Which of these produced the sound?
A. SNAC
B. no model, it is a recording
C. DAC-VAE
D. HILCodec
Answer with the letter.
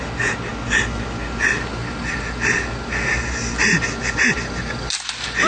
B